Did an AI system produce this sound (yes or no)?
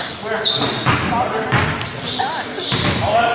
no